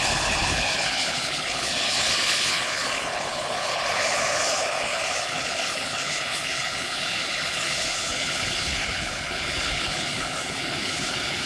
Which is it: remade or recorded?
remade